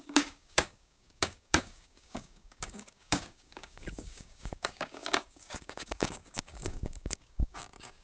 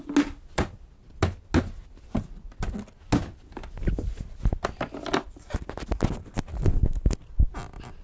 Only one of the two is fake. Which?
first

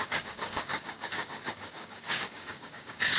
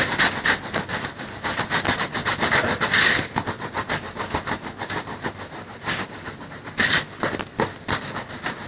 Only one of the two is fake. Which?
first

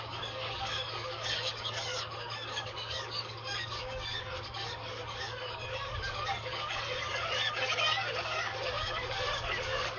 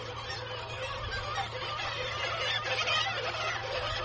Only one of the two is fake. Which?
first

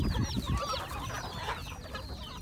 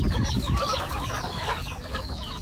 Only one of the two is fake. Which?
second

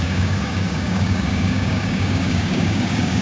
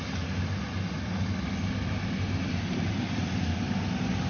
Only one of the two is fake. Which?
first